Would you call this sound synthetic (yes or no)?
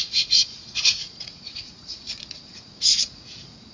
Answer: yes